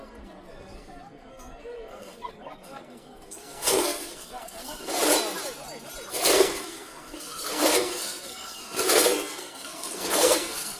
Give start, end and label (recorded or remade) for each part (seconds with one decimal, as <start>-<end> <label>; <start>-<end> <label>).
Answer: 0.0-5.0 remade; 5.0-6.1 recorded; 6.1-10.8 remade